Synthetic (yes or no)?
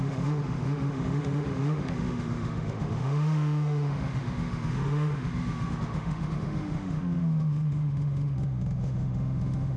yes